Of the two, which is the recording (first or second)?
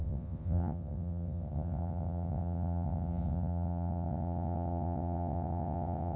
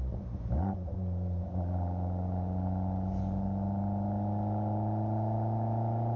second